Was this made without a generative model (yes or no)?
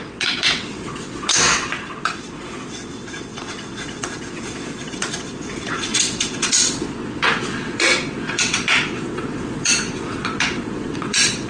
no